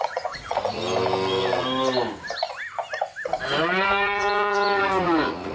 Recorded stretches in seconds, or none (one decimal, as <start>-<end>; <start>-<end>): 0.8-3.6